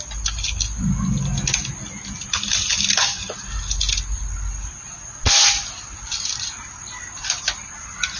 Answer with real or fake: real